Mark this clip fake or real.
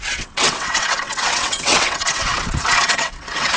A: fake